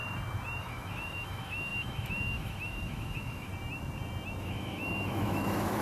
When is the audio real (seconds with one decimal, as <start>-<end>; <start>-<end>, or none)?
0.0-0.6; 3.5-4.4